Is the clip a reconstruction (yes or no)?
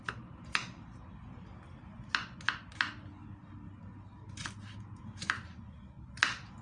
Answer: no